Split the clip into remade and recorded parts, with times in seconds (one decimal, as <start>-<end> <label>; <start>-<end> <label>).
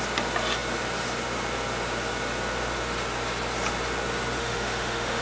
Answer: 0.0-4.4 recorded; 4.4-5.2 remade